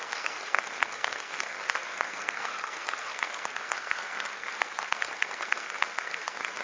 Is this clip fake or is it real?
fake